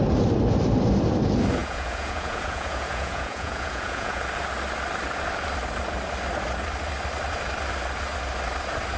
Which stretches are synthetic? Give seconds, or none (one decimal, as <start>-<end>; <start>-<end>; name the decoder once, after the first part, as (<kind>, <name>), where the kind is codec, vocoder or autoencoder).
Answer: 1.6-4.2 (vocoder, Vocos)